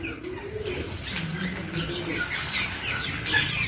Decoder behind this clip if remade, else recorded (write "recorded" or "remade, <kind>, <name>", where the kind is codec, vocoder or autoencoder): recorded